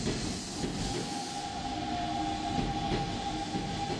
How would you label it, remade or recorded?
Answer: recorded